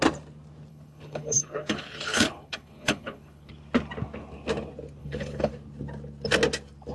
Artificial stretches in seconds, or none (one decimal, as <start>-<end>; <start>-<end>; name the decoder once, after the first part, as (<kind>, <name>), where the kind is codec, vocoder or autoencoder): 0.7-3.5 (codec, HILCodec); 5.0-5.5